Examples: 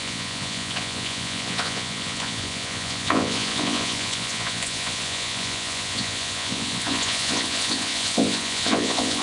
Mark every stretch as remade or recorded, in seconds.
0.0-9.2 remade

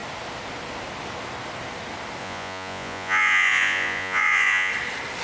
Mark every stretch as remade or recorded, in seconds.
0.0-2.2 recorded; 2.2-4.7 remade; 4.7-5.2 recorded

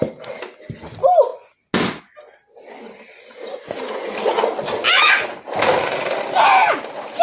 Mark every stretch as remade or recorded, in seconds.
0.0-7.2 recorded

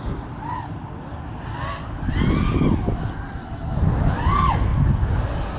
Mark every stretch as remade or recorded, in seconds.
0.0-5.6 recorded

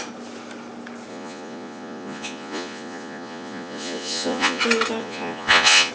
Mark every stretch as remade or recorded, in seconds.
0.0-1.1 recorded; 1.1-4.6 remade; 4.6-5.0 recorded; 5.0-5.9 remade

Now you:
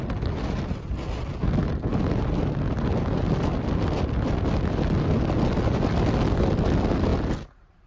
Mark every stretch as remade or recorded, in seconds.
0.0-7.9 recorded

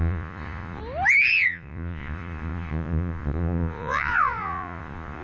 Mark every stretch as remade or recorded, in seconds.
0.0-0.8 remade; 0.8-1.3 recorded; 1.3-5.2 remade

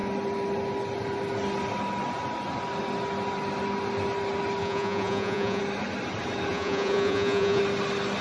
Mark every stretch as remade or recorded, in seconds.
0.0-4.6 recorded; 4.6-5.6 remade; 5.6-6.5 recorded; 6.5-7.6 remade; 7.6-8.2 recorded